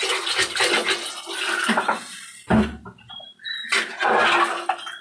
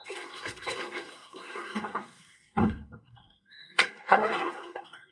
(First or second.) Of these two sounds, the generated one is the second